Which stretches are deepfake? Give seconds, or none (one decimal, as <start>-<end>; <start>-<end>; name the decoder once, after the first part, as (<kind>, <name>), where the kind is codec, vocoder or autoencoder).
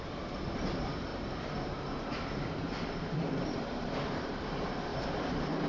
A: 1.1-4.5 (vocoder, BigVGAN v2); 4.9-5.7